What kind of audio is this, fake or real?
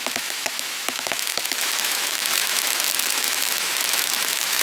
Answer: fake